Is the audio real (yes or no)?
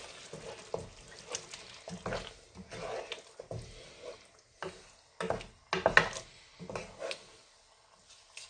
yes